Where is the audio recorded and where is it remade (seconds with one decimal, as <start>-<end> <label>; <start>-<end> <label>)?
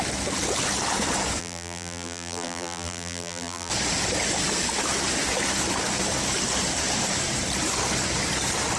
0.0-1.4 recorded; 1.4-3.7 remade; 3.7-8.8 recorded